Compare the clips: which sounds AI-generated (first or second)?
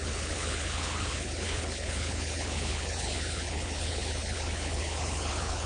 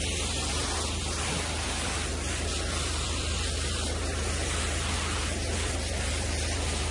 first